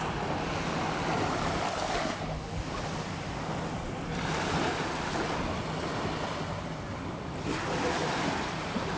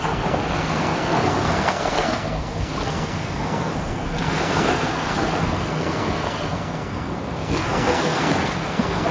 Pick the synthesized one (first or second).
second